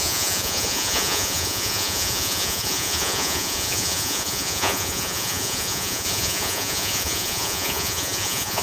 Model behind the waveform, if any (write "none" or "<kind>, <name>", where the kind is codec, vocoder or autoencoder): vocoder, Vocos